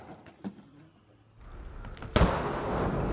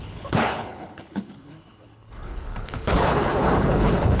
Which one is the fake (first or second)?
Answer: second